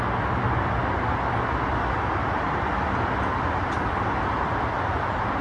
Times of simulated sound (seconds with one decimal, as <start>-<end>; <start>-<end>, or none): none